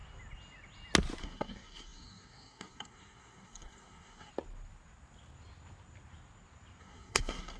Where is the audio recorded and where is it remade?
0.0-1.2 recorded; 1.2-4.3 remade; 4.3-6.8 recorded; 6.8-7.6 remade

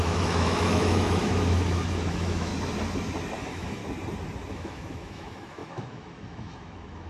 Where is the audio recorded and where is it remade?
0.0-2.5 remade; 2.5-3.4 recorded; 3.4-3.8 remade; 3.8-4.5 recorded; 4.5-7.1 remade

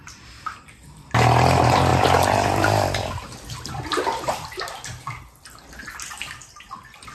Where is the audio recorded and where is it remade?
0.0-7.1 recorded

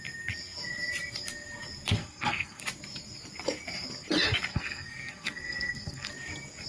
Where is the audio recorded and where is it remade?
0.0-2.0 recorded; 2.0-2.6 remade; 2.6-4.5 recorded; 4.5-6.1 remade; 6.1-6.7 recorded

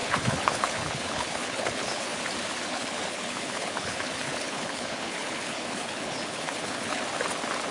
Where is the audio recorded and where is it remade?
0.0-2.2 remade; 2.2-2.7 recorded; 2.7-7.0 remade; 7.0-7.7 recorded

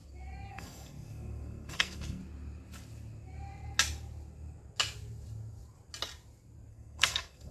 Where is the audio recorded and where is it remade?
0.0-0.5 recorded; 0.5-2.2 remade; 2.2-6.7 recorded; 6.7-7.5 remade